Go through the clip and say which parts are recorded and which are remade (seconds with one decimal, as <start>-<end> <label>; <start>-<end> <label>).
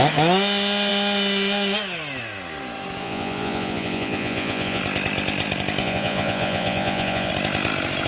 0.0-3.0 recorded; 3.0-4.8 remade; 4.8-5.8 recorded; 5.8-7.3 remade; 7.3-8.1 recorded